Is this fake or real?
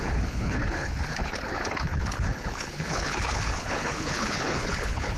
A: fake